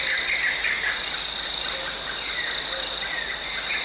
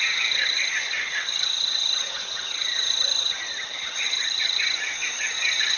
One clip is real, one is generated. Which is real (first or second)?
first